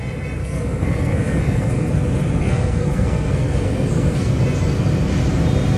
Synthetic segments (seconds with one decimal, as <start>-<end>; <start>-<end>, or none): 0.4-1.9; 2.4-4.4